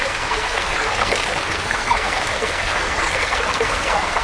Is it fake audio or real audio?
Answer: fake